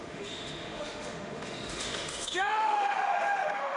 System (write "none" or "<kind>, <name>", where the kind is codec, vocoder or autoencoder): autoencoder, DAC-VAE